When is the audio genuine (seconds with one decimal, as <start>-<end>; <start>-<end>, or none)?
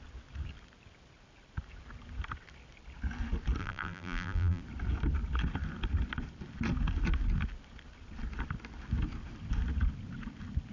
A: 0.0-3.6; 4.6-10.7